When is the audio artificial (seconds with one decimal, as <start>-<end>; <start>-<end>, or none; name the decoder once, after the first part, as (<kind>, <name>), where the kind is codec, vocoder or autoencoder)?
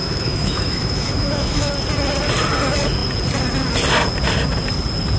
0.0-1.7 (autoencoder, DAC-VAE)